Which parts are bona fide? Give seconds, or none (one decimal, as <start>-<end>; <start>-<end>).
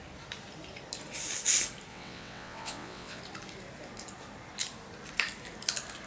0.0-1.9; 3.2-6.1